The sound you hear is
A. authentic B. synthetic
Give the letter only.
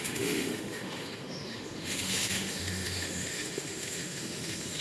B